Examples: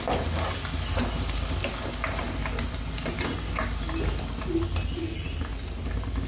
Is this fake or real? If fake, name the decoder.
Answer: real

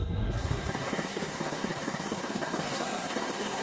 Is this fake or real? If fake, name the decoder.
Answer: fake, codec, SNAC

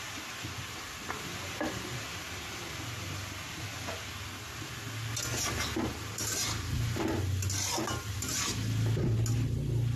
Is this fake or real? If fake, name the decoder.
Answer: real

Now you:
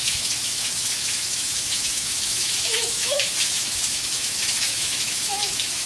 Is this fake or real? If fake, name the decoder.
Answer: fake, autoencoder, DAC-VAE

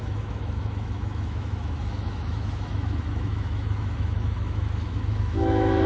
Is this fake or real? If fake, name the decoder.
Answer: fake, autoencoder, DAC-VAE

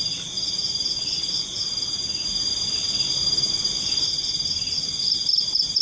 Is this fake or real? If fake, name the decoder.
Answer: real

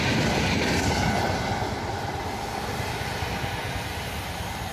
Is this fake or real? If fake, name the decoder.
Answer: real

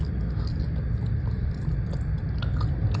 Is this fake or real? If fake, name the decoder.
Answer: real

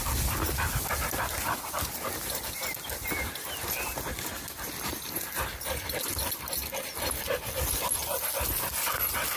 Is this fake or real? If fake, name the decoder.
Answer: real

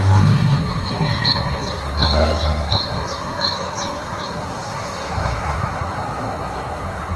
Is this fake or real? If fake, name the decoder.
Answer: fake, codec, SNAC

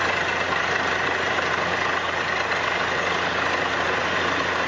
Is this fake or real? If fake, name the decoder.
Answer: fake, vocoder, BigVGAN v2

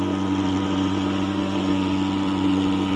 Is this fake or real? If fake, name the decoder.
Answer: real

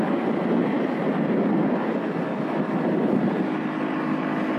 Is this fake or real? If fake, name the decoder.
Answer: real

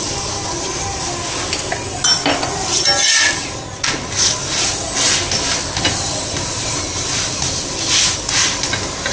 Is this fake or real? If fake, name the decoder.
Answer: real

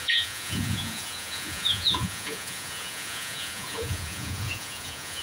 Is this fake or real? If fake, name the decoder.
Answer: fake, vocoder, Vocos